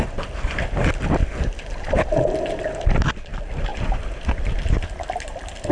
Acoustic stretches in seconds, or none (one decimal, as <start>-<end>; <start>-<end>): 0.0-5.7